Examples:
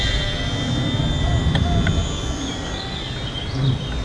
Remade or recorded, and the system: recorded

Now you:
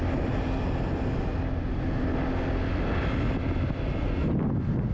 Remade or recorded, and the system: recorded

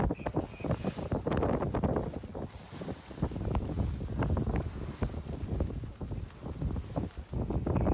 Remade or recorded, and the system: recorded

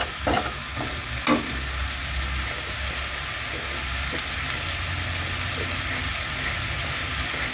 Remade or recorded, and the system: recorded